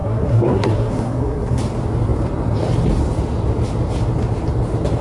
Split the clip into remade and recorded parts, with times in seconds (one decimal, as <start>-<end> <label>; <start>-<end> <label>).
0.0-1.6 remade; 1.6-5.0 recorded